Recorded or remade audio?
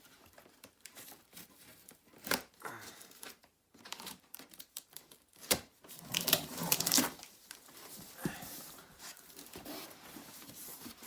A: remade